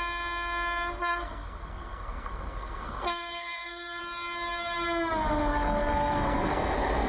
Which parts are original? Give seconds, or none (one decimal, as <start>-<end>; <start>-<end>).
0.0-1.0; 4.0-5.5

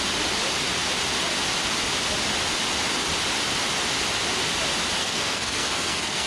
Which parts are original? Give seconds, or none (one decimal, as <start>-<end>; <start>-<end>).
0.0-5.0

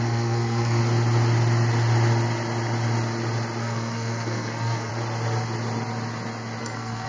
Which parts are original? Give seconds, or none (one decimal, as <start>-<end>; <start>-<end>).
0.8-3.6; 4.9-6.6

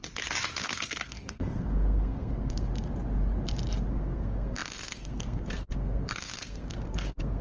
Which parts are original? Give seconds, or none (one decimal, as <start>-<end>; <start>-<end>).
0.0-0.6; 2.7-3.9

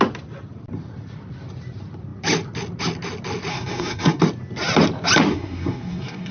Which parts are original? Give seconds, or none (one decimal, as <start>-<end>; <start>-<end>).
0.0-3.5; 4.2-5.3

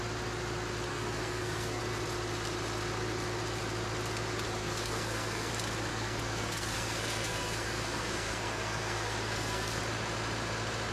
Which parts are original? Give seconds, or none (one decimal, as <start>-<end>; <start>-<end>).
0.0-0.9; 1.8-4.6; 5.5-5.9; 9.8-10.9

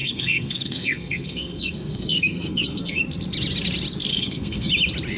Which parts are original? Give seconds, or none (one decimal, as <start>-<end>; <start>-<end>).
3.0-4.1; 4.7-5.2